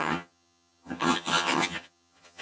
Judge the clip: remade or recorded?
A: remade